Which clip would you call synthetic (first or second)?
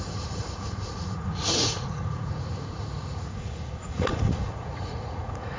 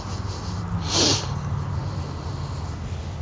first